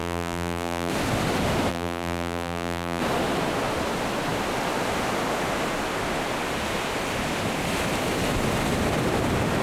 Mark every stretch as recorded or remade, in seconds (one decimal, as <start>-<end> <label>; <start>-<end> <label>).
0.0-0.9 remade; 0.9-1.7 recorded; 1.7-3.0 remade; 3.0-9.6 recorded

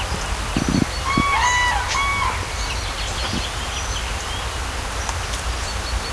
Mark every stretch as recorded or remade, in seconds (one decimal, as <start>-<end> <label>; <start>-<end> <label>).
0.0-6.1 recorded